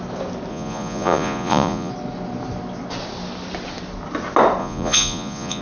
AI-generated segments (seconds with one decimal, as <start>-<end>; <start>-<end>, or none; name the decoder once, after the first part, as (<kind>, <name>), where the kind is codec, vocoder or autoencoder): 0.5-1.9 (vocoder, Vocos); 4.6-5.6